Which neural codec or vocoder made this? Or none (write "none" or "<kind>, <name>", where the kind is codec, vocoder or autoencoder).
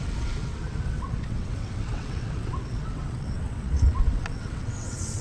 vocoder, WaveNeXt